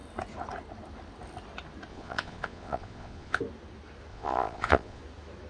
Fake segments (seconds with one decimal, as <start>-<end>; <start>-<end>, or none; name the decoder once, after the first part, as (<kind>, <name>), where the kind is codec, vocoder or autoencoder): 1.9-3.4 (vocoder, Vocos); 4.1-5.0